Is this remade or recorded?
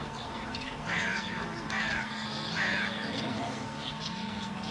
remade